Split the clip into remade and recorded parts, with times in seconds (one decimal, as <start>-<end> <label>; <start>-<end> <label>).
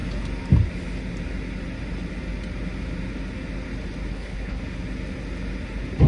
0.0-4.1 recorded; 4.1-4.6 remade; 4.6-6.1 recorded